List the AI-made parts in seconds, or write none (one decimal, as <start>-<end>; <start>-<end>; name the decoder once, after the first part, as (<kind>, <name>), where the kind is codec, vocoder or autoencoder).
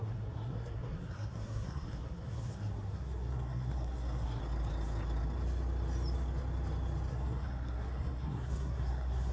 0.0-4.4 (codec, SNAC); 7.1-9.3